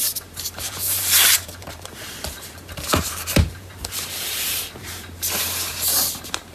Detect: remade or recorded remade